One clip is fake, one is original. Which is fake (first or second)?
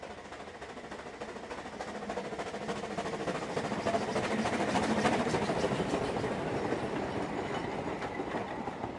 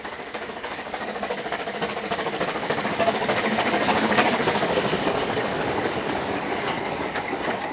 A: second